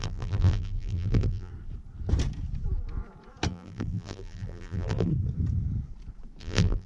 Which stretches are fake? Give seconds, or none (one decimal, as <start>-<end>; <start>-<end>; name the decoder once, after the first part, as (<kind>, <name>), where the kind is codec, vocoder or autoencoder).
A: 0.0-1.5 (vocoder, BigVGAN v2); 3.5-5.1; 6.4-6.9